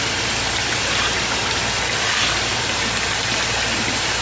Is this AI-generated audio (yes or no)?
no